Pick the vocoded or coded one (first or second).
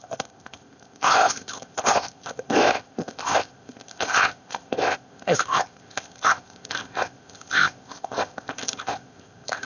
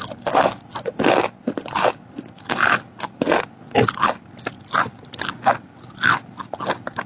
first